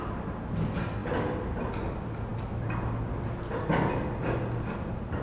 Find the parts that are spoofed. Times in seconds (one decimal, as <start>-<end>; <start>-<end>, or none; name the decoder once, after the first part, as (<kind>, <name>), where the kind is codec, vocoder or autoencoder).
none